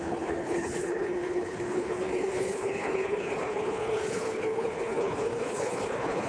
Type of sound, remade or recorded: remade